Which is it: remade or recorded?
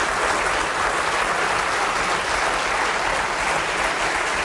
recorded